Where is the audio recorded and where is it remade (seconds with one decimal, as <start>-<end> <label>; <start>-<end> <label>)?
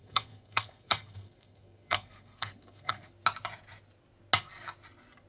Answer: 0.0-3.1 remade; 3.1-5.3 recorded